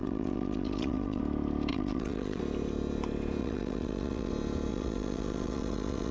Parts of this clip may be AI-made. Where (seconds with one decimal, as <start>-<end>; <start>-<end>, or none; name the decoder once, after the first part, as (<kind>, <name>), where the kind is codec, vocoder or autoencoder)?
0.0-1.2 (vocoder, WaveNeXt); 1.7-2.4; 3.4-4.3; 4.7-6.1